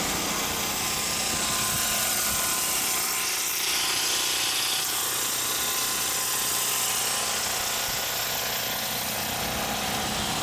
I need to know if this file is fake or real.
real